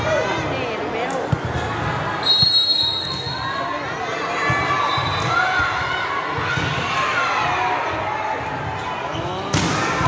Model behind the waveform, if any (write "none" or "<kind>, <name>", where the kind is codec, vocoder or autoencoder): none